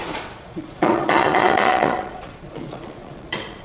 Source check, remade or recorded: remade